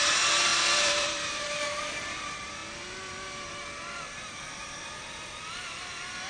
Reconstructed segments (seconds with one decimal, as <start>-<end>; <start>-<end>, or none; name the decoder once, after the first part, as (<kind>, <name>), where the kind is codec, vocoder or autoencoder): 0.0-2.6 (vocoder, BigVGAN v2); 3.5-6.3